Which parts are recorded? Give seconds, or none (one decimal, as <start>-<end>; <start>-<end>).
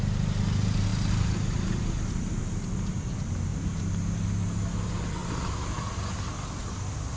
0.0-7.2